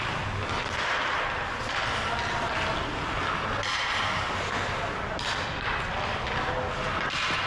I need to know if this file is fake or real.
real